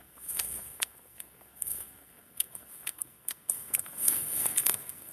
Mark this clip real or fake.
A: fake